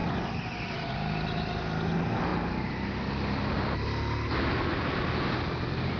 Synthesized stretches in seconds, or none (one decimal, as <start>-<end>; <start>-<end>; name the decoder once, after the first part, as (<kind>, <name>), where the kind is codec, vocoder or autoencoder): none